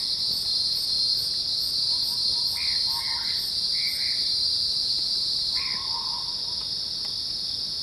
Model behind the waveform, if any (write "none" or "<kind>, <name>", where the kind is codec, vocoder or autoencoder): none